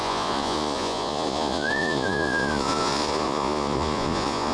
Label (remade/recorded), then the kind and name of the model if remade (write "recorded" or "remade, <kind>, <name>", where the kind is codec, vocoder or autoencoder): remade, vocoder, Vocos